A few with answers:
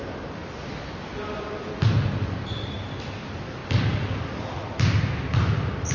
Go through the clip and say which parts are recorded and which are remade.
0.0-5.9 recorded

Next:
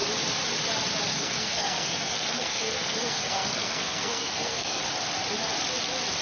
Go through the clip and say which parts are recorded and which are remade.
0.0-1.1 recorded; 1.1-4.8 remade; 4.8-6.2 recorded

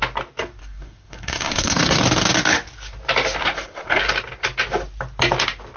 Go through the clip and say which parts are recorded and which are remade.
0.0-0.6 recorded; 0.6-2.0 remade; 2.0-3.4 recorded; 3.4-4.0 remade; 4.0-5.8 recorded

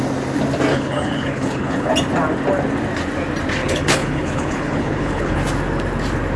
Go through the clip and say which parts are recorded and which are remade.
0.0-0.7 recorded; 0.7-1.9 remade; 1.9-3.6 recorded; 3.6-5.4 remade; 5.4-6.4 recorded

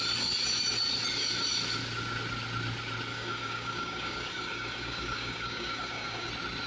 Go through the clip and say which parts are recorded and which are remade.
0.0-3.1 recorded; 3.1-6.3 remade; 6.3-6.7 recorded

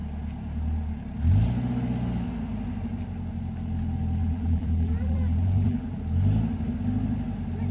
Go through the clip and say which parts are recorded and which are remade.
0.0-4.2 recorded; 4.2-6.0 remade; 6.0-7.7 recorded

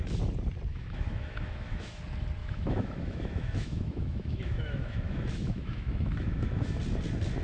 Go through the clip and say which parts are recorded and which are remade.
0.0-0.7 recorded; 0.7-2.0 remade; 2.0-2.4 recorded; 2.4-6.8 remade; 6.8-7.4 recorded

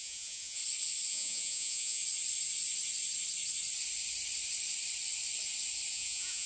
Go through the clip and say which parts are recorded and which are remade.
0.0-0.6 remade; 0.6-1.1 recorded; 1.1-2.0 remade; 2.0-5.9 recorded; 5.9-6.5 remade